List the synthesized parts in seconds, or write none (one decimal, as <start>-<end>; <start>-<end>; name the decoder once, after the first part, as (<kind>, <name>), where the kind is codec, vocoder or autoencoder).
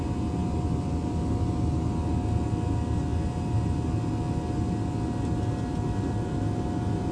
none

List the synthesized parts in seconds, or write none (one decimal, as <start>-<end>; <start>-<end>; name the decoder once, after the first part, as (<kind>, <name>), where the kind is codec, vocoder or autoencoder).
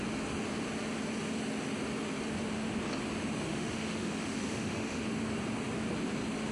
3.5-5.0 (autoencoder, DAC-VAE)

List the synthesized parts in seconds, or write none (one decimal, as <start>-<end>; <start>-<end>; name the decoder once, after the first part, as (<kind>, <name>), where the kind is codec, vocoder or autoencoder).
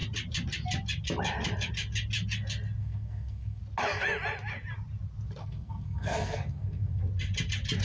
2.8-3.6 (codec, SNAC); 5.4-7.0